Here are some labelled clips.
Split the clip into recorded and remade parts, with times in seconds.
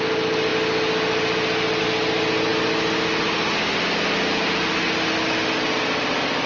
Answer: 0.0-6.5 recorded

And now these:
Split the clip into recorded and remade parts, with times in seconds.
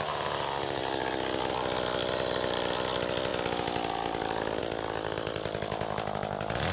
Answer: 0.0-6.7 recorded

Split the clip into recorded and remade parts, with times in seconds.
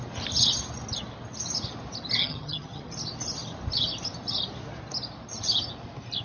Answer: 0.0-2.2 recorded; 2.2-2.9 remade; 2.9-6.2 recorded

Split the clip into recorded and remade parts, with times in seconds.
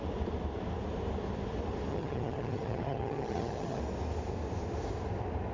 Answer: 0.0-1.9 recorded; 1.9-3.8 remade; 3.8-5.5 recorded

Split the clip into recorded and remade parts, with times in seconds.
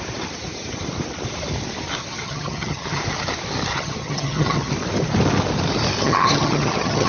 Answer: 0.0-2.0 recorded; 2.0-3.0 remade; 3.0-3.7 recorded; 3.7-4.7 remade; 4.7-6.0 recorded; 6.0-7.1 remade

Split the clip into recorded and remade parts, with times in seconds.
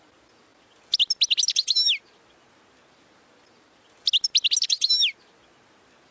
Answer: 0.0-6.1 recorded